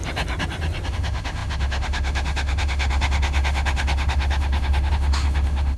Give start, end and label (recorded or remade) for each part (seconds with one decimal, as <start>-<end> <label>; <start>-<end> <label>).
0.0-0.9 recorded; 0.9-5.8 remade